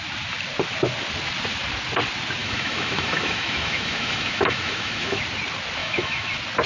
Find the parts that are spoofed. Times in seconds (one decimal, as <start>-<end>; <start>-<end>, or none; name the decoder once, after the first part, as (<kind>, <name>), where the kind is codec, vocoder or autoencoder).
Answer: 2.4-5.2 (autoencoder, DAC-VAE); 5.8-6.3